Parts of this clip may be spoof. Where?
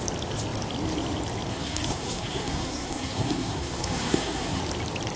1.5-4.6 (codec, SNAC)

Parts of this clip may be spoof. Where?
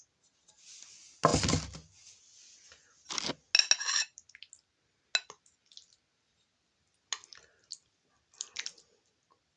none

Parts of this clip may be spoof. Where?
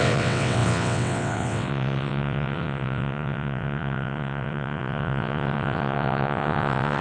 0.0-7.0 (vocoder, WaveNeXt)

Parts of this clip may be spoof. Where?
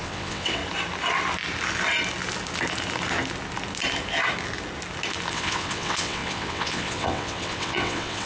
0.0-0.6 (vocoder, WaveNeXt); 5.3-8.3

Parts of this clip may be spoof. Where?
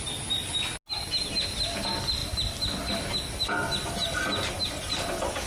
none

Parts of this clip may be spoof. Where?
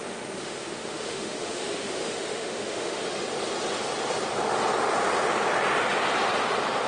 0.0-3.0 (autoencoder, DAC-VAE)